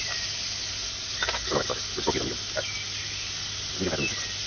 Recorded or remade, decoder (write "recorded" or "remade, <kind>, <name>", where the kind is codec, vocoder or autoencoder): recorded